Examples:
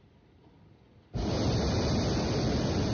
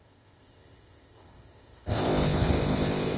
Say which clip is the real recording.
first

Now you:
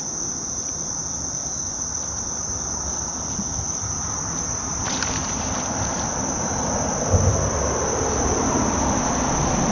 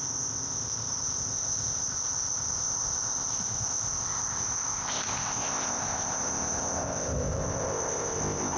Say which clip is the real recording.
first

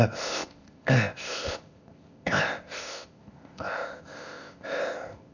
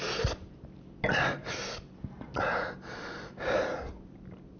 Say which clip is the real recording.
second